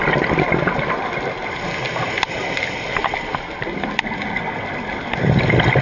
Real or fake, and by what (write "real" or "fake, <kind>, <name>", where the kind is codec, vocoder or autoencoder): real